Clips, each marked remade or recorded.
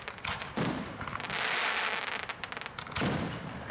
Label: recorded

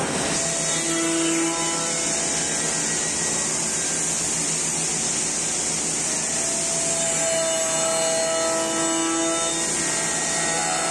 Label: recorded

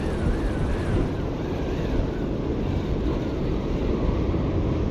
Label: recorded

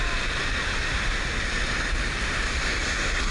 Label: recorded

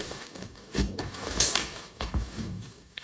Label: remade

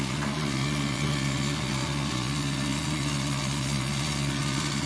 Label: remade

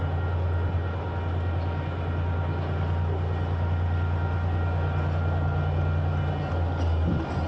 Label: recorded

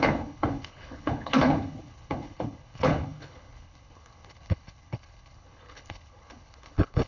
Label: remade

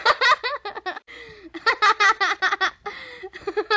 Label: recorded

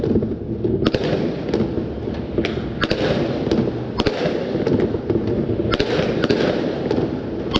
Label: recorded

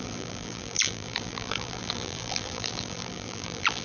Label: remade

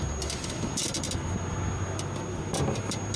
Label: recorded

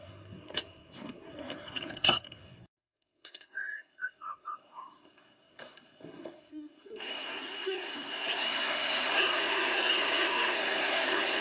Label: remade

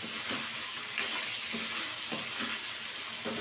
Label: recorded